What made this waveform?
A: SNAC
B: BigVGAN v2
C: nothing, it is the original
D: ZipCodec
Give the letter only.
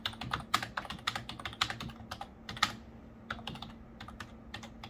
C